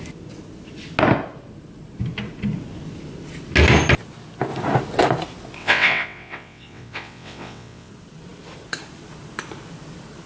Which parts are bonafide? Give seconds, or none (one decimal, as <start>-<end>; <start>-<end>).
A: 0.0-5.6; 7.9-10.3